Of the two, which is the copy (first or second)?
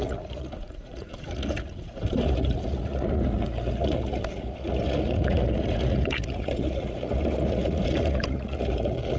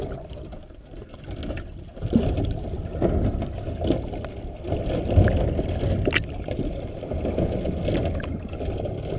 first